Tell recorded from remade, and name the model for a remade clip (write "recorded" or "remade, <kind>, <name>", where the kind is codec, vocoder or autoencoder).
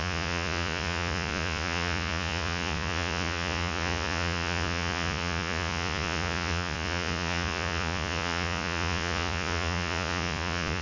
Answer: remade, vocoder, Vocos